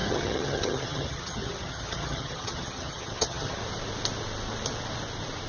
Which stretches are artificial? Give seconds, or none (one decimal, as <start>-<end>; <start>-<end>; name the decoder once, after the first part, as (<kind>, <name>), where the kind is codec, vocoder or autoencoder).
0.0-3.6 (vocoder, HiFi-GAN)